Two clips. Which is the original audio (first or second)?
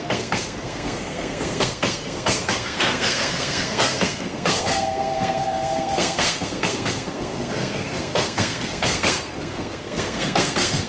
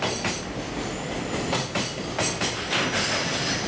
second